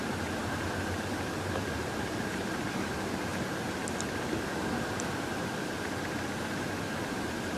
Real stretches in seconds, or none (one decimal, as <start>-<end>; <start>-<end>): 3.3-6.5